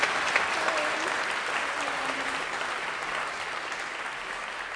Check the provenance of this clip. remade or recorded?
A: recorded